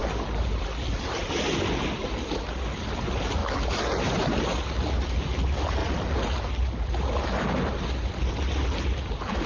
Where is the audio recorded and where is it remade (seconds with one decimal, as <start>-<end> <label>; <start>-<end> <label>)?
0.0-9.5 recorded